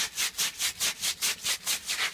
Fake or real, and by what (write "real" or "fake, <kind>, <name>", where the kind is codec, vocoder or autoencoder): real